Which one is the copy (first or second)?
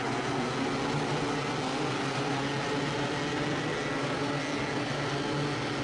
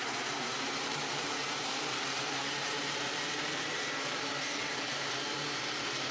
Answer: second